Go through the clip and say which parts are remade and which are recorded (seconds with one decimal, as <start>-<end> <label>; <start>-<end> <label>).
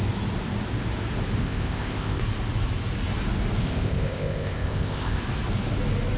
0.0-1.4 recorded; 1.4-2.2 remade; 2.2-3.6 recorded; 3.6-5.2 remade; 5.2-6.2 recorded